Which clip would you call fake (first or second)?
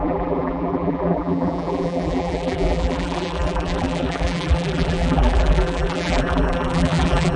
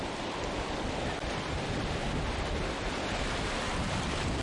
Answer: first